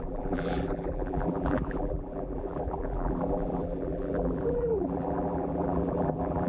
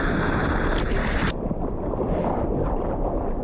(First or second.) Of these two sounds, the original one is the second